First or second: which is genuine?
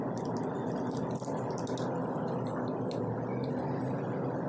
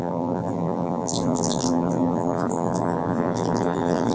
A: first